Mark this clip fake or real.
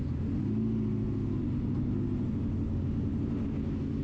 real